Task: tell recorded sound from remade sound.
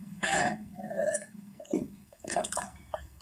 remade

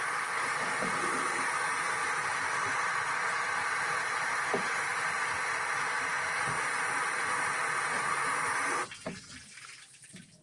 recorded